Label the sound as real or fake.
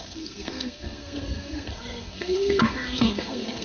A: fake